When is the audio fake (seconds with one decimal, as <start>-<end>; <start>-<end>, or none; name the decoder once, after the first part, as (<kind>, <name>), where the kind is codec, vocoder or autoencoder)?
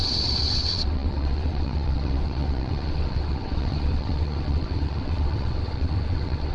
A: 0.0-6.5 (vocoder, WaveNeXt)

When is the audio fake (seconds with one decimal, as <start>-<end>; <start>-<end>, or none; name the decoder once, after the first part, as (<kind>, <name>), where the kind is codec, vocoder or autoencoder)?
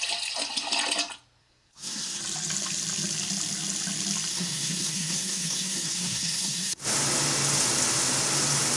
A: 1.4-2.2 (codec, SNAC); 4.3-6.8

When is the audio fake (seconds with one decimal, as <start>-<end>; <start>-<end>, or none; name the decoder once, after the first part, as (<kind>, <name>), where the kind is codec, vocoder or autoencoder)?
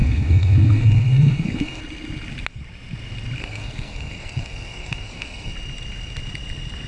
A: 0.0-1.8 (codec, SNAC); 3.4-5.5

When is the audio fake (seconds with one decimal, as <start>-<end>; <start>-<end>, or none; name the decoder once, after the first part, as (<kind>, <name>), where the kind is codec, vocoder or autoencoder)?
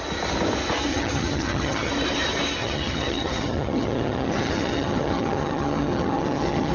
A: 0.9-1.9 (vocoder, HiFi-GAN); 2.6-6.7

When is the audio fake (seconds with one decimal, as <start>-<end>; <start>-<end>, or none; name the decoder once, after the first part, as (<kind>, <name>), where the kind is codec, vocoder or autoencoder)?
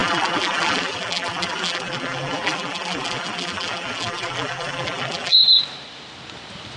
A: 0.0-5.4 (vocoder, BigVGAN v2)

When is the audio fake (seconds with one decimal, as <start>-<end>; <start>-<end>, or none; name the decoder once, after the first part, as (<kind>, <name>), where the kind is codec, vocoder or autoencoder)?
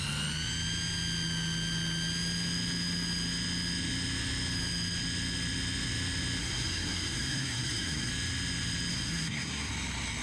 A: 6.4-8.1 (codec, SNAC); 8.9-9.7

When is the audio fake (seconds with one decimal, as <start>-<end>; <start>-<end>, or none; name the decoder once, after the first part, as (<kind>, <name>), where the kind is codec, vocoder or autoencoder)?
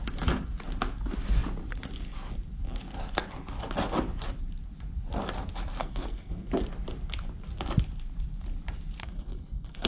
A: 5.8-6.5 (codec, SNAC); 9.0-9.9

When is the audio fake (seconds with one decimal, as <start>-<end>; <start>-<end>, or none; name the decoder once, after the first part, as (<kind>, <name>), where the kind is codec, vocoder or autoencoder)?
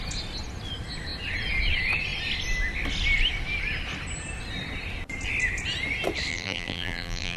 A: 6.3-7.4 (vocoder, BigVGAN v2)